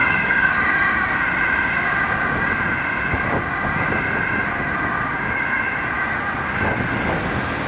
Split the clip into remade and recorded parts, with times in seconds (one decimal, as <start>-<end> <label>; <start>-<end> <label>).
0.0-0.5 remade; 0.5-7.7 recorded